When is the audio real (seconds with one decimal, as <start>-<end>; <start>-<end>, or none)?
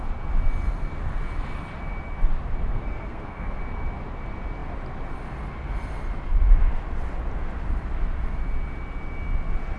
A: 0.0-2.7; 3.6-9.8